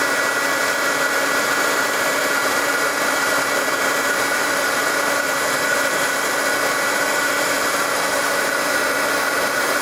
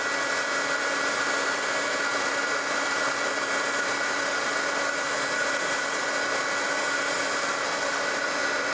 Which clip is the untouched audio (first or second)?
second